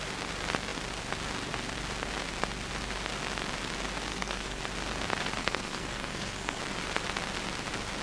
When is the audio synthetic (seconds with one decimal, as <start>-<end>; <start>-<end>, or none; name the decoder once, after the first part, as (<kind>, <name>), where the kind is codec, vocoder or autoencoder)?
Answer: 4.1-4.6 (codec, SNAC); 5.4-6.6